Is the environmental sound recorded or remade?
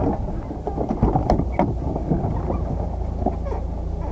recorded